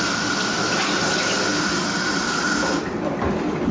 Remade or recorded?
remade